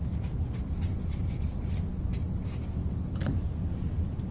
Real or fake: real